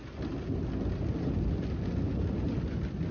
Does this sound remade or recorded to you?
recorded